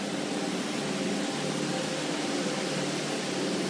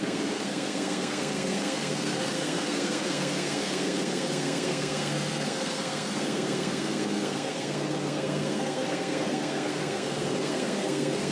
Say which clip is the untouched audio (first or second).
first